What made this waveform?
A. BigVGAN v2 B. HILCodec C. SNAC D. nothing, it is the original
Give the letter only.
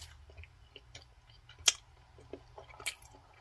D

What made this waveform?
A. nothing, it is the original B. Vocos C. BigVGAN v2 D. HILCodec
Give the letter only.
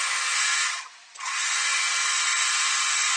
B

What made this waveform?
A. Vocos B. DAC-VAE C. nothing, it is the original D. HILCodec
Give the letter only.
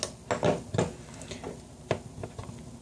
C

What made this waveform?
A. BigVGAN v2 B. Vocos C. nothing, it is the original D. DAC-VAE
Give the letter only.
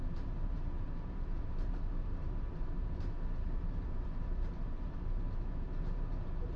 A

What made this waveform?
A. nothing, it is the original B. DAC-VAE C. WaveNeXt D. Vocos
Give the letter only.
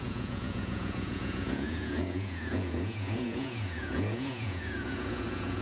D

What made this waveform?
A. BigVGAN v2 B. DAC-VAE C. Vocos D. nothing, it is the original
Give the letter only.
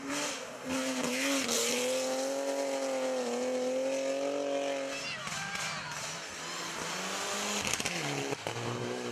D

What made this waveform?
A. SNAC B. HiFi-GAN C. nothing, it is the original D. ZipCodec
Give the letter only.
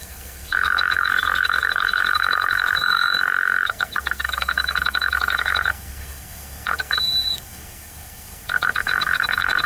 A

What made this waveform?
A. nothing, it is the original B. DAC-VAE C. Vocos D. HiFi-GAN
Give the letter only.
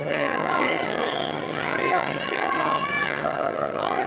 D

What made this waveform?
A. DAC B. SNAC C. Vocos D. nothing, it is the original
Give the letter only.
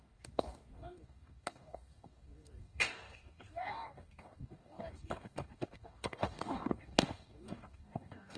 A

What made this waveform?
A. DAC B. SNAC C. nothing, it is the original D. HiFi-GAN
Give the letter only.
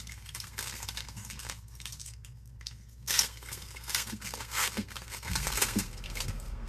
B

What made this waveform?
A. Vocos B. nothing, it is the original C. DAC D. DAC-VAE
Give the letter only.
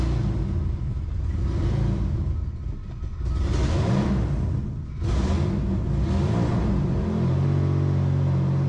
B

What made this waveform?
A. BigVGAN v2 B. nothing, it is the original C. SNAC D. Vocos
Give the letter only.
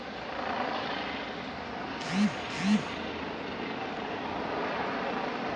B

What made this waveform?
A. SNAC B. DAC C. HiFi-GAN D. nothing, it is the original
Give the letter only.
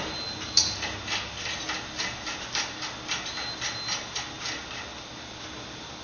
D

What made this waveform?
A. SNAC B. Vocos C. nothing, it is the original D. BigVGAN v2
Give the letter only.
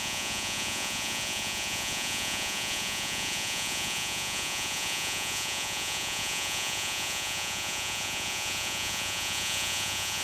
B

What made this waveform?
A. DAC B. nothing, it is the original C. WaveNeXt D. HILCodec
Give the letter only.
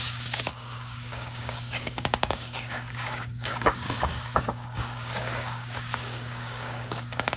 A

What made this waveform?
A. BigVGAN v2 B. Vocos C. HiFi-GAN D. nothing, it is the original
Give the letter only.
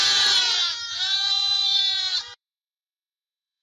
B